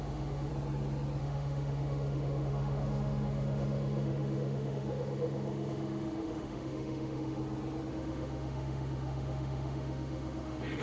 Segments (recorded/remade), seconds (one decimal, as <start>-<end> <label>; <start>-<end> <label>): 0.0-0.5 remade; 0.5-1.2 recorded; 1.2-7.4 remade; 7.4-7.9 recorded; 7.9-10.8 remade